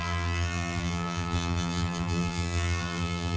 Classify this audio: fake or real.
fake